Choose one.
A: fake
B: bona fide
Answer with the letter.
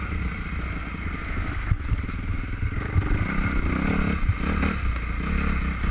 B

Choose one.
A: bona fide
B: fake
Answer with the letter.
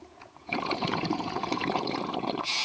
B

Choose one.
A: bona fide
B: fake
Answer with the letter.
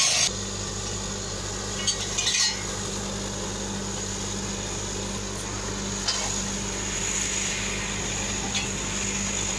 A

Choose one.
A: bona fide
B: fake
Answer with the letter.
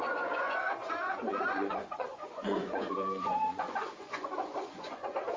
B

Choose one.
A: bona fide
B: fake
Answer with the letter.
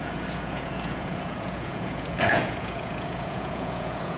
B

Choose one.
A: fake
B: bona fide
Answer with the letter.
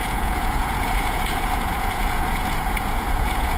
A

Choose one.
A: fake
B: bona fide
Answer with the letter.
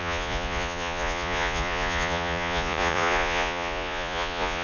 A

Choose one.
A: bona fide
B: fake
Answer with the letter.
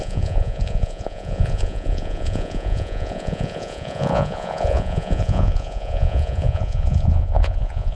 B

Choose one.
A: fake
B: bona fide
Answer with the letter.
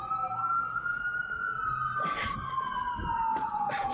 B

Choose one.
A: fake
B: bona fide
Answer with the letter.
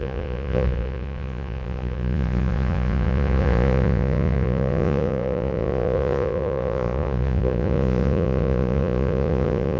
A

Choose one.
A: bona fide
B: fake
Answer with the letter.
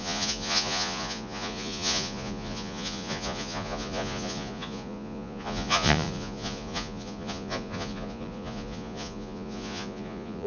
B